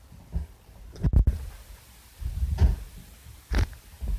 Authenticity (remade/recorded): recorded